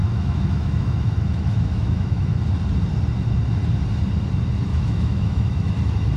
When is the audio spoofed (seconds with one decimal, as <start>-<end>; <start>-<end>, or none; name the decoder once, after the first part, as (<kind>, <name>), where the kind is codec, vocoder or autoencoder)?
0.0-2.4 (autoencoder, DAC-VAE); 4.7-5.7